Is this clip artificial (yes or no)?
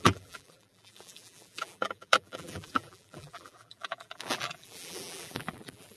yes